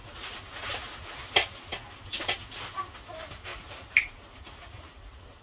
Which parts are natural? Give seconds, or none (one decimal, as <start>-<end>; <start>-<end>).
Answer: 0.0-3.1; 3.5-4.8